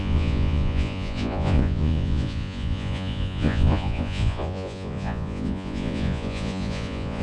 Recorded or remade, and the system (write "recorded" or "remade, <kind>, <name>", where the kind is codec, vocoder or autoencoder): remade, vocoder, Vocos